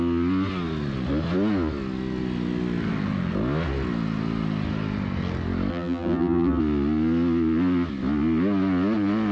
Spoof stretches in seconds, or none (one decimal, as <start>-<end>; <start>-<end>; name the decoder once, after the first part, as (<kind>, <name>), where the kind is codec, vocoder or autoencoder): 5.7-6.6 (vocoder, BigVGAN v2)